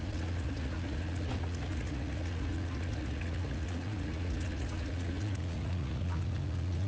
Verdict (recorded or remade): remade